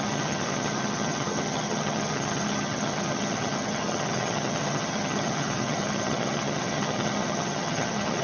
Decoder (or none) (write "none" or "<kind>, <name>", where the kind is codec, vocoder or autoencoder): vocoder, HiFi-GAN